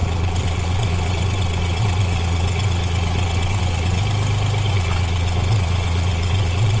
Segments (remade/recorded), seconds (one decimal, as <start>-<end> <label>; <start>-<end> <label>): 0.0-4.0 remade; 4.0-4.7 recorded; 4.7-6.8 remade